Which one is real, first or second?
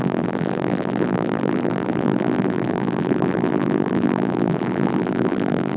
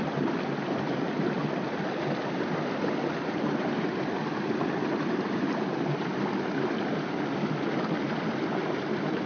second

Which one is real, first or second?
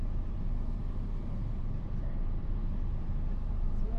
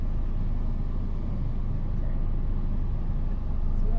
second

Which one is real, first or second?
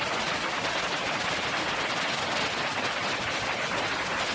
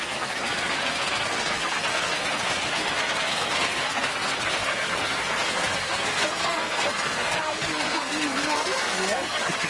first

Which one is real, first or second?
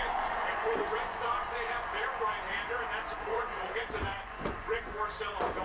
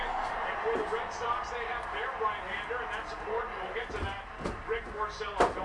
second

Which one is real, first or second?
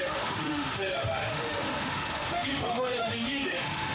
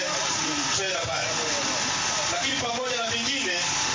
second